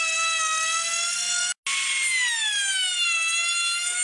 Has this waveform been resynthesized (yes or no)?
no